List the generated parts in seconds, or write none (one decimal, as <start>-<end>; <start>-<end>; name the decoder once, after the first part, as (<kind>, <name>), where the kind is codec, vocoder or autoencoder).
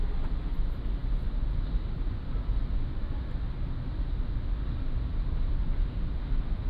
none